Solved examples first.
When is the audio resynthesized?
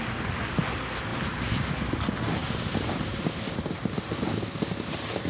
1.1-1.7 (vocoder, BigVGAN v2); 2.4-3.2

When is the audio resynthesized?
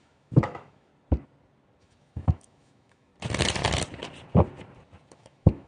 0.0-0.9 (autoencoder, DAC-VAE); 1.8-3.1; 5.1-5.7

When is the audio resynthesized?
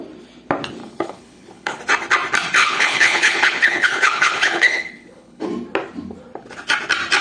0.8-1.8 (codec, HILCodec); 2.6-5.5